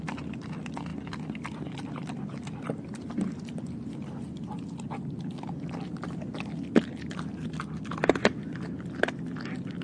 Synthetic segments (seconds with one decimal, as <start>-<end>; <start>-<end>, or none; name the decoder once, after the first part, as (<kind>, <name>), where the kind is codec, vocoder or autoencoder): none